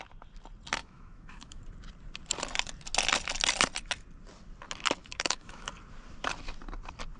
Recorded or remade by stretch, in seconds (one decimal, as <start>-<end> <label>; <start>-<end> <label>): 0.0-0.8 recorded; 0.8-1.6 remade; 1.6-5.0 recorded; 5.0-5.7 remade; 5.7-7.2 recorded